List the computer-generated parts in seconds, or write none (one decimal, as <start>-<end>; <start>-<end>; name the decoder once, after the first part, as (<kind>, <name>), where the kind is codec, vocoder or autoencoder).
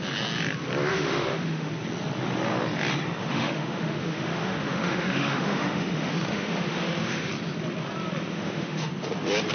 0.9-1.7 (autoencoder, DAC-VAE); 3.2-7.3; 8.3-8.9